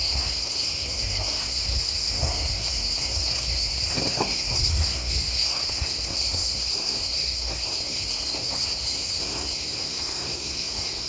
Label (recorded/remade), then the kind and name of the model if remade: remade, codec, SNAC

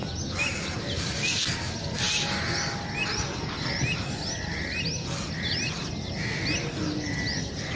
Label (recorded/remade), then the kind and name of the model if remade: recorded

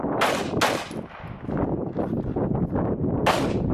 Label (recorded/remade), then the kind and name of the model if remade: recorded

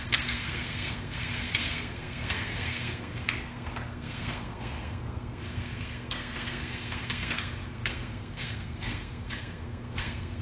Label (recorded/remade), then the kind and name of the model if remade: remade, codec, SNAC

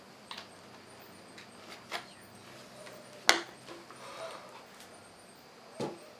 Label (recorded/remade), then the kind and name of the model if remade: recorded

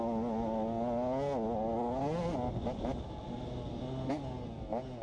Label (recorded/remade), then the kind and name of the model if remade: recorded